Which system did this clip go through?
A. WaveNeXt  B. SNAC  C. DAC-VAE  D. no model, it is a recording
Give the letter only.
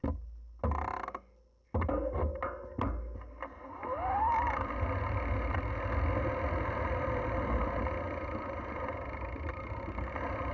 D